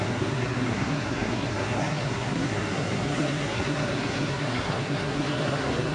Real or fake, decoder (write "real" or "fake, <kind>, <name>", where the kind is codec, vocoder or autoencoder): fake, codec, SNAC